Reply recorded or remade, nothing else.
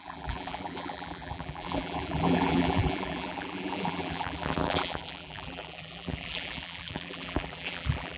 remade